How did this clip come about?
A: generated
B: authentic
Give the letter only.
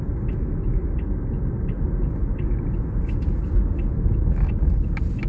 B